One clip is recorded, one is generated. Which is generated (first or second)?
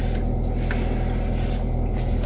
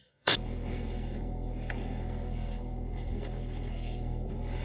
second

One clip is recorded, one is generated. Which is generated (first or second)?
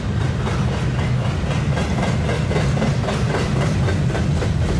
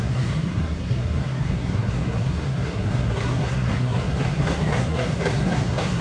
second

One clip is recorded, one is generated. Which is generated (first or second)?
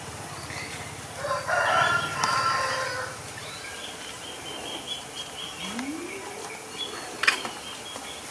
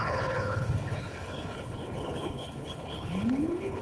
second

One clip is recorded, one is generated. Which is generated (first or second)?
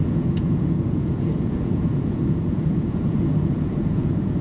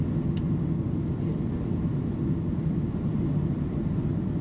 first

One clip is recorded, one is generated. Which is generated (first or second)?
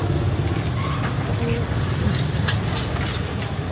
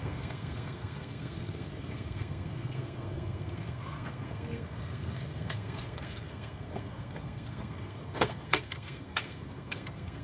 second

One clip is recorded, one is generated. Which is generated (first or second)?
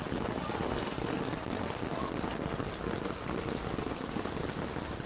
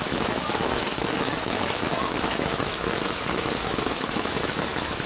second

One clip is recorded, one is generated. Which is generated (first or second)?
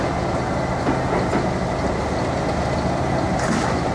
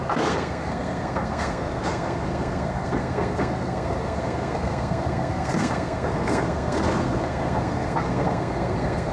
second